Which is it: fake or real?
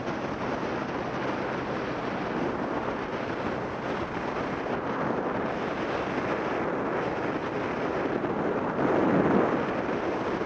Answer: real